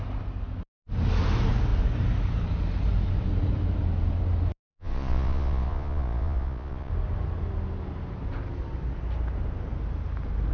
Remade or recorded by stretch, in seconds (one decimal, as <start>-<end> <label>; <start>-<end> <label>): 0.0-4.7 recorded; 4.7-6.9 remade; 6.9-10.5 recorded